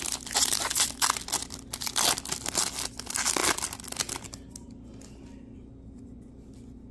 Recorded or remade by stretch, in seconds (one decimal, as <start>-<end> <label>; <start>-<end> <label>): 0.0-6.9 recorded